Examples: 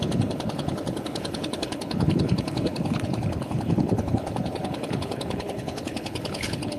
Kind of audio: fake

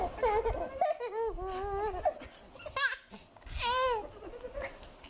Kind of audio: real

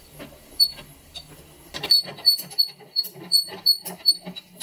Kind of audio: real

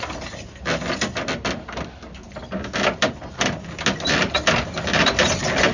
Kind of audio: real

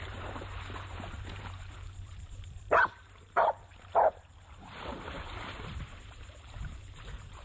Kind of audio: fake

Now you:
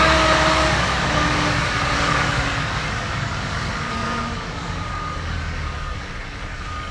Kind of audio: fake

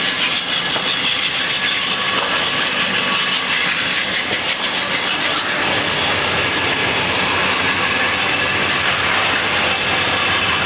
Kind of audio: real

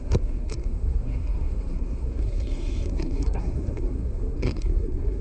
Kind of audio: fake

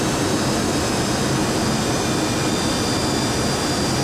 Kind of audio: real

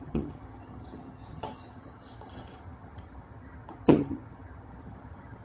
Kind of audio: fake